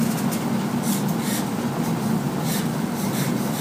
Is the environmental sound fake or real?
real